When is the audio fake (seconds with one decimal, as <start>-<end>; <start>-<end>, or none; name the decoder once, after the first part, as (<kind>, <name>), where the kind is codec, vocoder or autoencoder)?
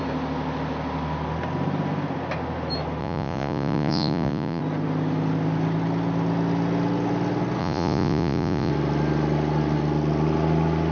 3.0-4.6 (vocoder, Vocos); 7.6-8.7